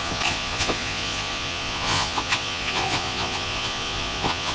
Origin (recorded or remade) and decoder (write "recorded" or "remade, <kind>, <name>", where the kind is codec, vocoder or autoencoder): remade, vocoder, Vocos